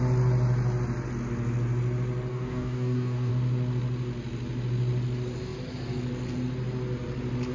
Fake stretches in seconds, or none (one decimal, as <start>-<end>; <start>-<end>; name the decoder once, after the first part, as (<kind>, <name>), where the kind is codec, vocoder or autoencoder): 2.3-3.3 (codec, DAC)